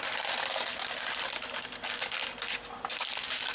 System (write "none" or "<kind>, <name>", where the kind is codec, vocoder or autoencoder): none